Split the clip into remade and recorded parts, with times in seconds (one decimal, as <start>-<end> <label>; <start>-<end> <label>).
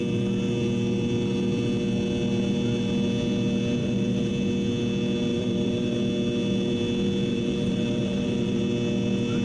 0.0-3.8 recorded; 3.8-4.3 remade; 4.3-5.3 recorded; 5.3-6.0 remade; 6.0-7.3 recorded; 7.3-8.6 remade; 8.6-9.4 recorded